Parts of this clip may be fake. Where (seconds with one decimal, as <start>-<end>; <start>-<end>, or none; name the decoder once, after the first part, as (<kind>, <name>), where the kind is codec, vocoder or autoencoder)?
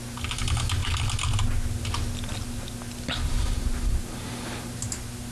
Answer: none